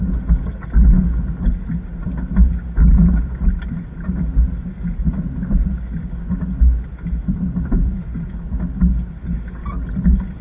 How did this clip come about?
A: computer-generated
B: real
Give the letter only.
B